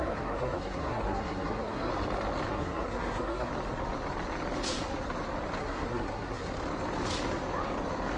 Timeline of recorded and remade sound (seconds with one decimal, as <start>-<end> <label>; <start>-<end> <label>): 0.0-1.9 remade; 1.9-2.5 recorded; 2.5-3.5 remade; 3.5-5.6 recorded; 5.6-6.5 remade; 6.5-8.2 recorded